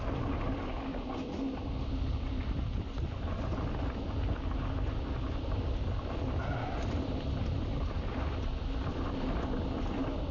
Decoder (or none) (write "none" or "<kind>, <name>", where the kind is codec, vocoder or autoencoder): none